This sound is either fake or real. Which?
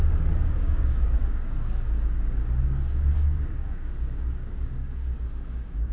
fake